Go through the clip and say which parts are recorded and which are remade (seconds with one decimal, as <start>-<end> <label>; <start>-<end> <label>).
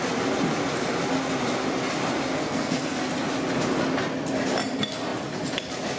0.0-2.4 recorded; 2.4-3.0 remade; 3.0-6.0 recorded